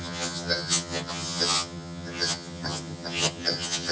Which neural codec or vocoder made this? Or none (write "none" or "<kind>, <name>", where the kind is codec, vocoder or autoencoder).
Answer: vocoder, HiFi-GAN